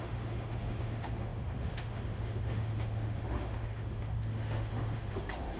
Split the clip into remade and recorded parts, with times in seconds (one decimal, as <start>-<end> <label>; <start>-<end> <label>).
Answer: 0.0-5.6 remade